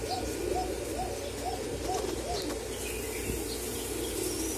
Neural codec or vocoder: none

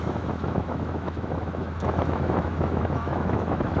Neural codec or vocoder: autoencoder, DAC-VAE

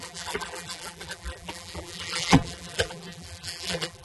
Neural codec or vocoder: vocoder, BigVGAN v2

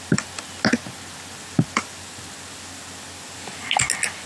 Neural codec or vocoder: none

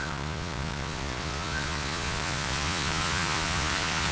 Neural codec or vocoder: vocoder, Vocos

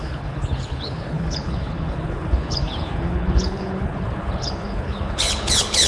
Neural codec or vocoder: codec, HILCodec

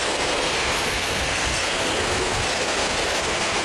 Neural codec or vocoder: codec, SNAC